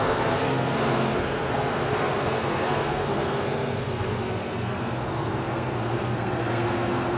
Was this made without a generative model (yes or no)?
no